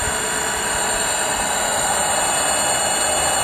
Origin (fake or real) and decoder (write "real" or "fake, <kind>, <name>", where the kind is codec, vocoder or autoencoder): real